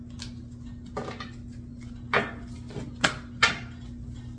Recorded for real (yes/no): yes